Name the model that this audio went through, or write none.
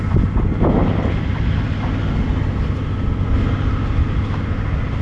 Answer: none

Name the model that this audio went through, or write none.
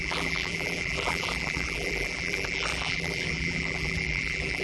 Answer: vocoder, BigVGAN v2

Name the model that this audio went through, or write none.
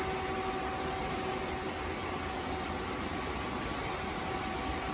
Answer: none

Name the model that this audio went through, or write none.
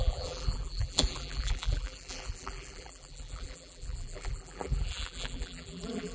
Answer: vocoder, BigVGAN v2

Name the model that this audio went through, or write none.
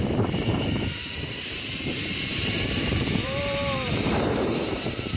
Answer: vocoder, BigVGAN v2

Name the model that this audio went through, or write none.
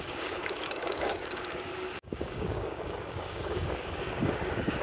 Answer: codec, DAC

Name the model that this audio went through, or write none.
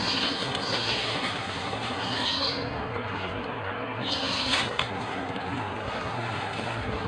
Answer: codec, SNAC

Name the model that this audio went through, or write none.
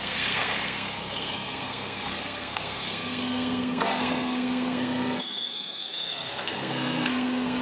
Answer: codec, SNAC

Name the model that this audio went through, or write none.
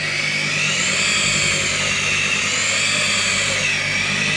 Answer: none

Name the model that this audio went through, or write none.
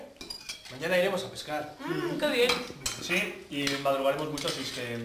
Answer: none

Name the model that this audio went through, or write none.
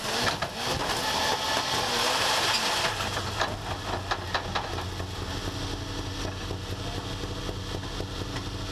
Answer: none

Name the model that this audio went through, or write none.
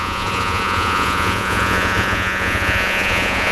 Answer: vocoder, Vocos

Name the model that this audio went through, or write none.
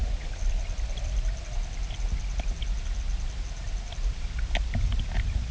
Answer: none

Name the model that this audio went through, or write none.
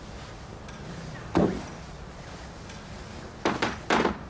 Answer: none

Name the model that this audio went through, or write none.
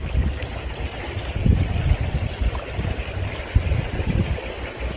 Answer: none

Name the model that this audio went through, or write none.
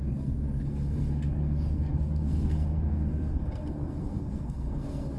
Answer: codec, SNAC